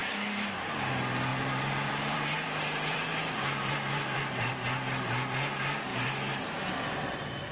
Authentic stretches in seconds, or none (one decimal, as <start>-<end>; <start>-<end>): 0.9-1.3; 4.5-5.9; 6.8-7.5